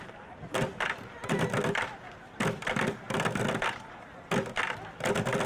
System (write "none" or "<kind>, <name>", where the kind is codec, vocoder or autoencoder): none